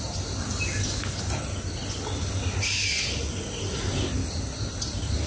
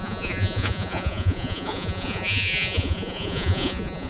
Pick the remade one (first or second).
second